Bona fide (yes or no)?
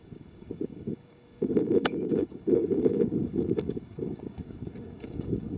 no